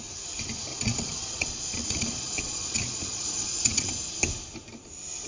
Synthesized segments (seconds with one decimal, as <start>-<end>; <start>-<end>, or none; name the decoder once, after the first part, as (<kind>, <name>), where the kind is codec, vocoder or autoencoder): 0.7-3.9 (vocoder, Vocos)